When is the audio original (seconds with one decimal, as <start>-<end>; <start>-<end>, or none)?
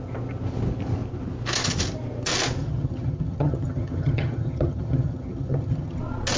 0.0-2.6; 6.0-6.4